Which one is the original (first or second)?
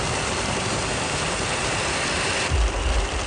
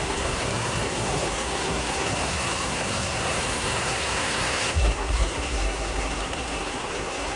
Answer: first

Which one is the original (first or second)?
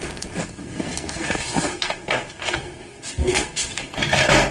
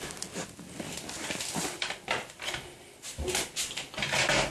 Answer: second